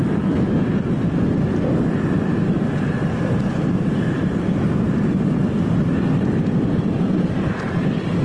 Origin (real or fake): real